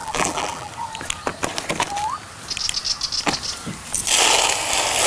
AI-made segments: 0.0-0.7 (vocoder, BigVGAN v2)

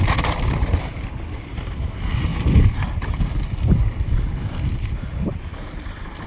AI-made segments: none